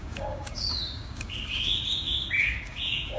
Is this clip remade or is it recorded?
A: remade